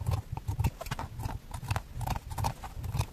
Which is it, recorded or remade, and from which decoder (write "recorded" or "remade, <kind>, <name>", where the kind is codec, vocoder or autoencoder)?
recorded